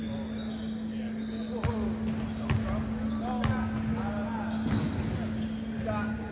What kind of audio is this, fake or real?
real